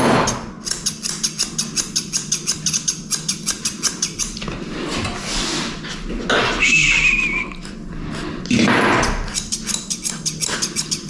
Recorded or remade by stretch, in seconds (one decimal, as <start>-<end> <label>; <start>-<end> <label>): 0.0-11.1 recorded